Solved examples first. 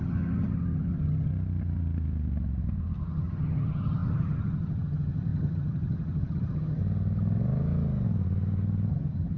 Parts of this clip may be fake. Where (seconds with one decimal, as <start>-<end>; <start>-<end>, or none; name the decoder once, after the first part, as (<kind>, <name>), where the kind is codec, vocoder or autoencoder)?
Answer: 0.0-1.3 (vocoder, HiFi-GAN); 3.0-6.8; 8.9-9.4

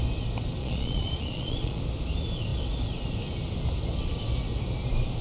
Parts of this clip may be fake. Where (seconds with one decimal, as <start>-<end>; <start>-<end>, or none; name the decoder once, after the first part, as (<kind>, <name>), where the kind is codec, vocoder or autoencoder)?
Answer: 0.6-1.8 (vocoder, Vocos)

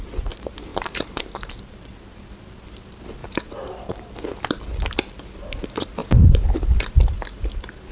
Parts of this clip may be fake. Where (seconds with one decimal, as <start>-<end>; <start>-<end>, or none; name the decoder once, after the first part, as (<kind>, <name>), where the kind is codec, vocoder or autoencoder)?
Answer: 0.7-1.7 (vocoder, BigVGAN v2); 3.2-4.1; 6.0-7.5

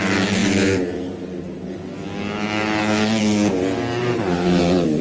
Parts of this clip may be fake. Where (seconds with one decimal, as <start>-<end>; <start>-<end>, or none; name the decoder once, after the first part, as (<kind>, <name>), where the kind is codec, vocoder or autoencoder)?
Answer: 4.0-4.6 (vocoder, BigVGAN v2)

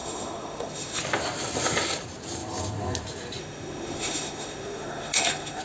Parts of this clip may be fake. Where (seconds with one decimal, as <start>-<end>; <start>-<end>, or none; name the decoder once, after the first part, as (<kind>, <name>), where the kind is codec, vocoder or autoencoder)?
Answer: 0.0-1.0 (autoencoder, DAC-VAE); 3.4-5.6

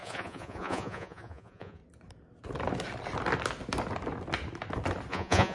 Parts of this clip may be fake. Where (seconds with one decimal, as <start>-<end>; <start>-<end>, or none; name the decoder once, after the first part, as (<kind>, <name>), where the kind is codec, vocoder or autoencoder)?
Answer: 0.0-1.8 (vocoder, Vocos); 5.1-5.5

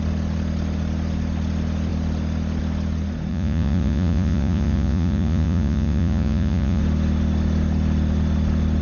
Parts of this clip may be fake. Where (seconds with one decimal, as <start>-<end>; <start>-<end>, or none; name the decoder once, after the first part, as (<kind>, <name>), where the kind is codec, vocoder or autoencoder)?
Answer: 3.3-6.8 (vocoder, Vocos)